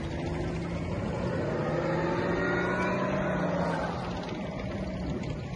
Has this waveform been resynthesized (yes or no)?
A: no